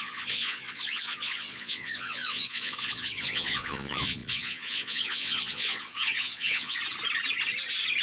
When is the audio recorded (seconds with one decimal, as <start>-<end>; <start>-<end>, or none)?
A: 6.8-8.0